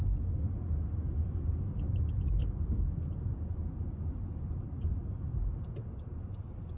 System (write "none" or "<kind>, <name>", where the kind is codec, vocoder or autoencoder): none